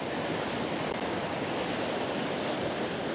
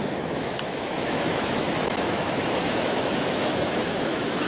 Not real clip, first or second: second